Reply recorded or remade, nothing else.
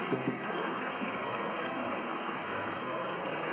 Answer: remade